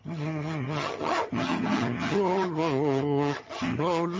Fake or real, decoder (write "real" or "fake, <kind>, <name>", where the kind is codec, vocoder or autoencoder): fake, vocoder, HiFi-GAN